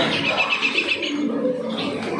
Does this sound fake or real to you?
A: real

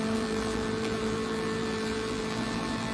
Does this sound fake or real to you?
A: fake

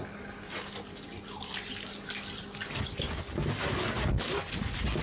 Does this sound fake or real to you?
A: real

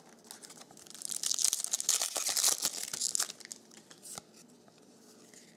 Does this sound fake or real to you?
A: real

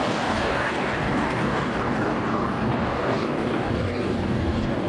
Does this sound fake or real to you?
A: fake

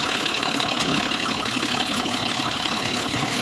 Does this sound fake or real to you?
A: fake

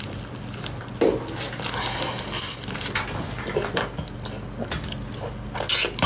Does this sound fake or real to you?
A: real